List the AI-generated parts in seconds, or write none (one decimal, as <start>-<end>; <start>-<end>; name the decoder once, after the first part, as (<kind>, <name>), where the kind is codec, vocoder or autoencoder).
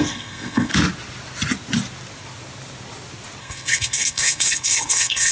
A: 0.0-0.7 (codec, SNAC); 3.4-5.3